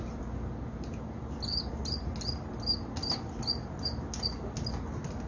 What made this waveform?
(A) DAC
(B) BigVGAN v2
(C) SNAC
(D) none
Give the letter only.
D